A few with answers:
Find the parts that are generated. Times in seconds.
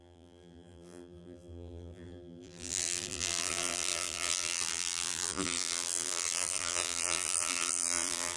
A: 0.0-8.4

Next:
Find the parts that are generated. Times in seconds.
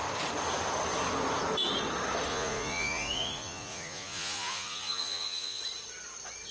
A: 2.3-5.6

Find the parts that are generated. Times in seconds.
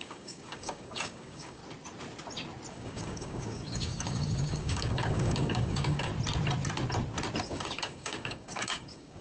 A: 0.0-1.6; 2.7-6.1; 7.4-9.2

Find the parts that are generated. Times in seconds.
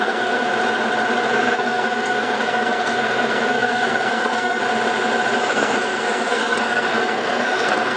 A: 0.0-0.5; 1.3-4.6; 5.4-8.0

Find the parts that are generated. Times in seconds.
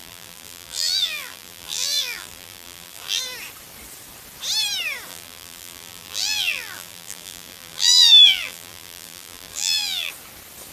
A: 0.0-3.2; 5.1-10.1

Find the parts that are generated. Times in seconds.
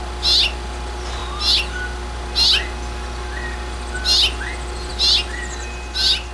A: none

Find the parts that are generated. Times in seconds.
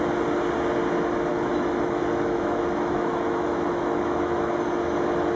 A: 1.3-4.5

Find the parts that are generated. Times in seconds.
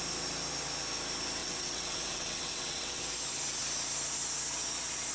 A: 1.4-3.0